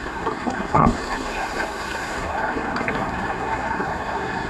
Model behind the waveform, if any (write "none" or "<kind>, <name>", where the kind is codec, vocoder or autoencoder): codec, SNAC